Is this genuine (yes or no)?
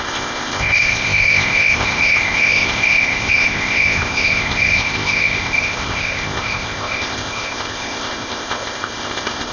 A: no